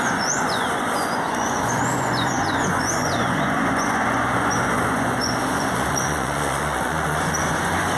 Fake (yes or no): yes